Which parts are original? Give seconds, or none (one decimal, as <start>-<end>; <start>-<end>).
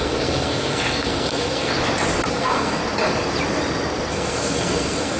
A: 1.7-2.3; 2.8-4.1